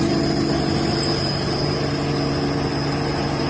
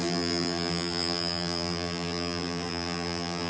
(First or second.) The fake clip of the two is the second